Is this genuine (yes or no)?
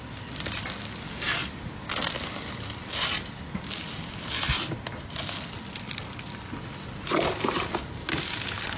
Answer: yes